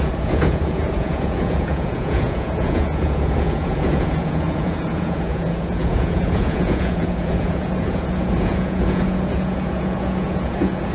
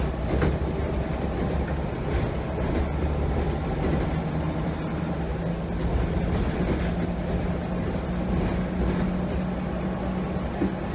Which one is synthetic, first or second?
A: first